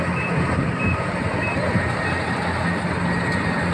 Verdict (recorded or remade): recorded